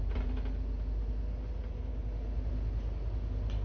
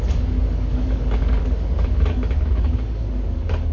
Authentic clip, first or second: first